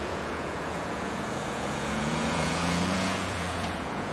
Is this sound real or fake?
fake